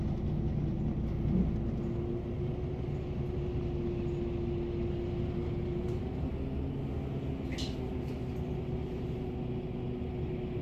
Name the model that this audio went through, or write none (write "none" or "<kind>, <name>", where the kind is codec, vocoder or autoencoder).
none